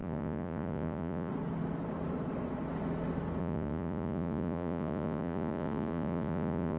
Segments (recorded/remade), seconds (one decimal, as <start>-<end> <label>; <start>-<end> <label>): 0.0-1.3 remade; 1.3-3.4 recorded; 3.4-6.8 remade